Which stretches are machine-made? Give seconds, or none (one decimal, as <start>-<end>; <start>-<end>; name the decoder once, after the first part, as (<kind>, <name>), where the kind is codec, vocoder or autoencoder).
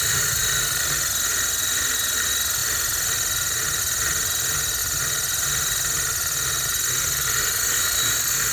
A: 1.3-1.8 (vocoder, BigVGAN v2)